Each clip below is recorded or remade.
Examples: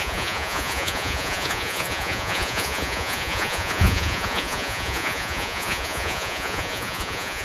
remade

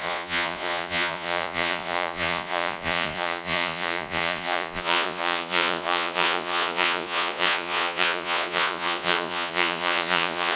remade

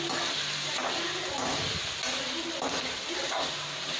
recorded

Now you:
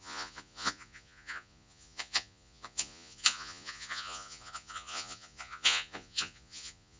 remade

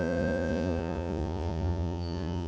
remade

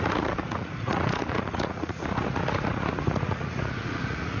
remade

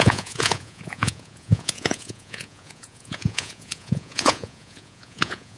remade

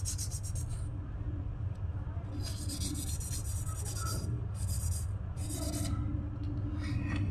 recorded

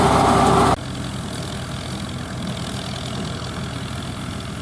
recorded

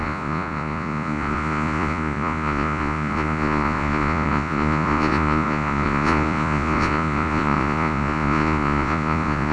remade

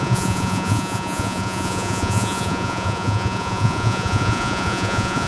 remade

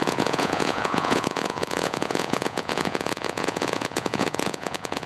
remade